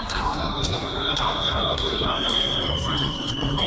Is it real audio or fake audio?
fake